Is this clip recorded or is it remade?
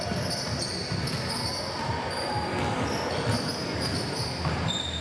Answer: recorded